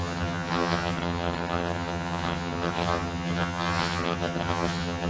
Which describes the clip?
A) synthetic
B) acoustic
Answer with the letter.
A